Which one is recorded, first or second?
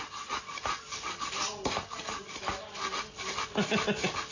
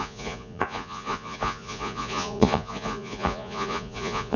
first